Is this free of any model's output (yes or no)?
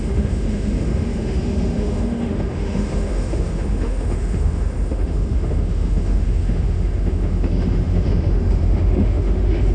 no